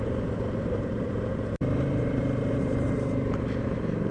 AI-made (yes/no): yes